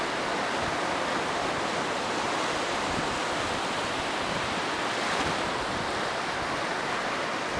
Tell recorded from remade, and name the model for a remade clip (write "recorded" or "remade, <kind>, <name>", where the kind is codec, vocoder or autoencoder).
recorded